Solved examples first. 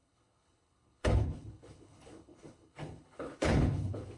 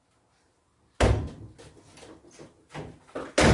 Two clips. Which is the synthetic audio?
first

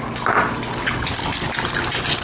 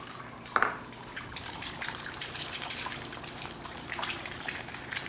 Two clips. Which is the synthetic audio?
second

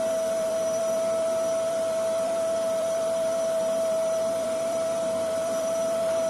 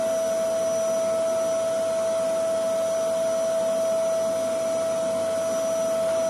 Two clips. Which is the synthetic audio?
first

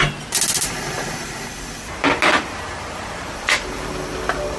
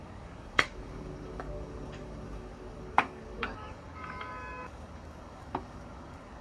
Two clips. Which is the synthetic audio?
second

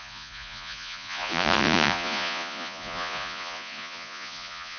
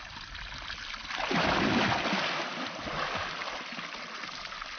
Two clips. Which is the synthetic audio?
first